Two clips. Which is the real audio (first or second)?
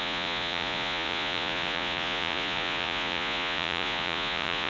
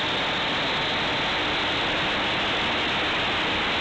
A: second